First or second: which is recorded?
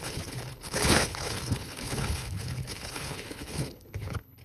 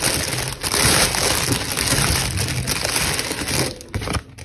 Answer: second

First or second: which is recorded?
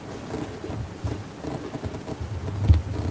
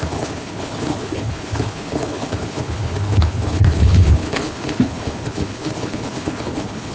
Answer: first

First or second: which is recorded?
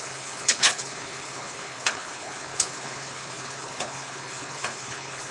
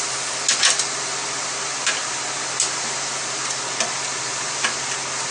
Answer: second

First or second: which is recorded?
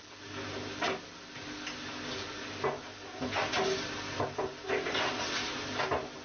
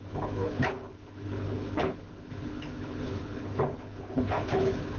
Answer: first